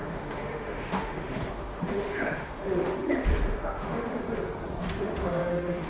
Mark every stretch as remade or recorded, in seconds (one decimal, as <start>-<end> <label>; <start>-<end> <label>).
0.0-4.2 remade; 4.2-4.8 recorded; 4.8-5.9 remade